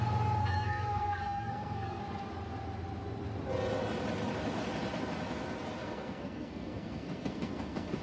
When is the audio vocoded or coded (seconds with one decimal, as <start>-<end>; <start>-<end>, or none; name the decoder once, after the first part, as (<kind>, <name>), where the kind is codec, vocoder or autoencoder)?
0.4-2.0 (codec, SNAC); 5.8-8.0